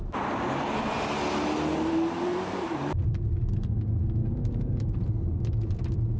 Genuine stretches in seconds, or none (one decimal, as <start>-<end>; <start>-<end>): 0.0-1.7; 3.7-4.2; 5.1-6.2